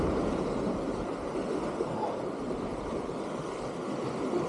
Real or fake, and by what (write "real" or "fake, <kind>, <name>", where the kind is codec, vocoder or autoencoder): real